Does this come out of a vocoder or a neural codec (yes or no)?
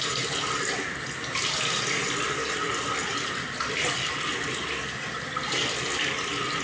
no